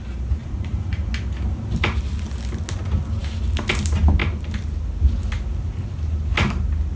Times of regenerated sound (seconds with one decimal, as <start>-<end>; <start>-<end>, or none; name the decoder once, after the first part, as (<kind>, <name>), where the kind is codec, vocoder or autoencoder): 0.4-1.1 (vocoder, Vocos)